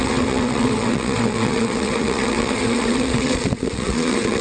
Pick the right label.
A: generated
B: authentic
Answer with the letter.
A